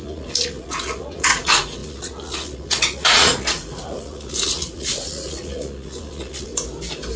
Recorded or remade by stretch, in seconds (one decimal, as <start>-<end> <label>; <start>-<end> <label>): 0.0-6.5 remade; 6.5-7.2 recorded

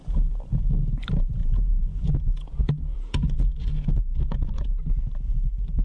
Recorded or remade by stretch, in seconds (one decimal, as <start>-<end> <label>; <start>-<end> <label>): 0.0-1.4 recorded; 1.4-4.9 remade; 4.9-5.8 recorded

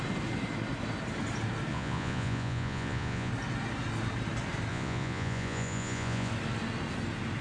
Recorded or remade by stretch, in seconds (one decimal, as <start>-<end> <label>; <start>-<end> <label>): 0.0-1.7 recorded; 1.7-3.3 remade; 3.3-4.7 recorded; 4.7-6.3 remade; 6.3-7.4 recorded